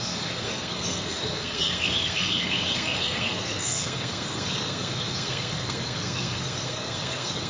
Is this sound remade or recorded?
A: remade